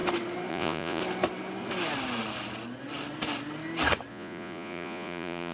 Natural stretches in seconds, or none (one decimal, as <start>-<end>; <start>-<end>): 0.0-0.5; 1.0-4.1